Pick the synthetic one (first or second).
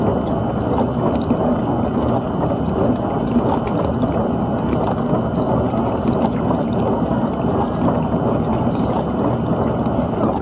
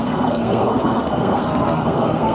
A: second